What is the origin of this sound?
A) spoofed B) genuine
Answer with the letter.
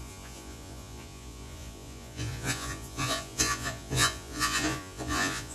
A